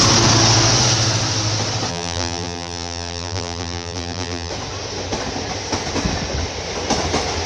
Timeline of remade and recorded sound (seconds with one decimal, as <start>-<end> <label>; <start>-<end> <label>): 0.0-1.9 recorded; 1.9-4.5 remade; 4.5-7.5 recorded